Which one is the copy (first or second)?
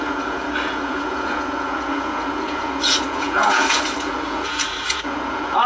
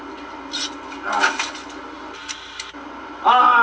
first